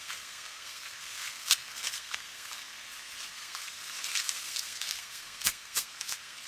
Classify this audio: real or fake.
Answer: fake